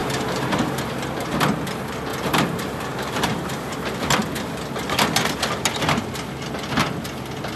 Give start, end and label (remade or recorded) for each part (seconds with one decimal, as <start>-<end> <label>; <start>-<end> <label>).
0.0-0.8 remade; 0.8-2.1 recorded; 2.1-3.7 remade; 3.7-7.6 recorded